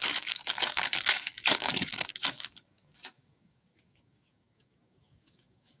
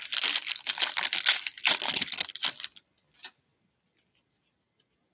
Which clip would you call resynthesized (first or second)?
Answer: first